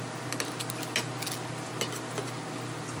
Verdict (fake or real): real